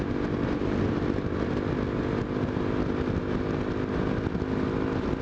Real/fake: real